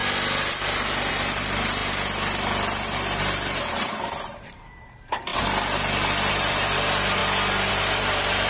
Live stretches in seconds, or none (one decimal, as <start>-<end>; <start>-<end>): 0.0-1.1; 1.8-3.5; 5.3-6.3; 7.2-7.7